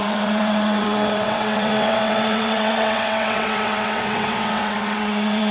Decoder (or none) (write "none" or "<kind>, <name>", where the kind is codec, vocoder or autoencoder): vocoder, WaveNeXt